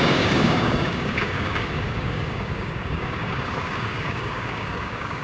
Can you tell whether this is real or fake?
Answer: fake